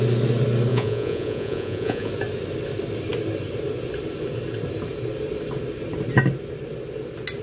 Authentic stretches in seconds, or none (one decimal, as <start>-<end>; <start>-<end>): 0.0-0.7; 2.1-7.4